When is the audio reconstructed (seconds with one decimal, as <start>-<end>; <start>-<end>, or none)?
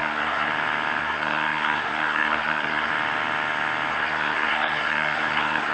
0.0-0.5; 1.0-2.9; 3.9-5.7